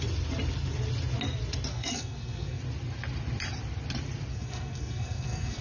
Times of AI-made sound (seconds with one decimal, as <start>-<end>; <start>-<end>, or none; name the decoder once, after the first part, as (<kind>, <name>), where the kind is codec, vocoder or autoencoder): 1.7-2.6 (codec, SNAC); 4.3-5.6